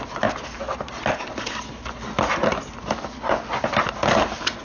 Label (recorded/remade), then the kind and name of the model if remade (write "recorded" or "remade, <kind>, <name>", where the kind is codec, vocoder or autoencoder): recorded